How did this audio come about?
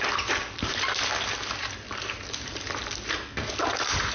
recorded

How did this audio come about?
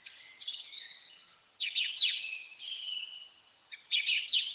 remade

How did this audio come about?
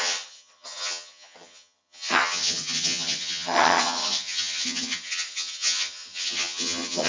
remade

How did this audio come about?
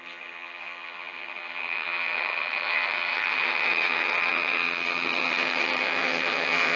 remade